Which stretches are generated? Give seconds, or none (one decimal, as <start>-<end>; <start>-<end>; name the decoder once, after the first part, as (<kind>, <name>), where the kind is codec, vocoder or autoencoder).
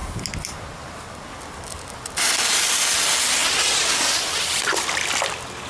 none